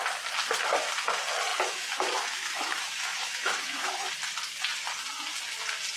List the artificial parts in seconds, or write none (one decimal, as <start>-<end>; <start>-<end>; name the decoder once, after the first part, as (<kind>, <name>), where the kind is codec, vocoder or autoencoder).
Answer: 1.5-4.1 (autoencoder, DAC-VAE)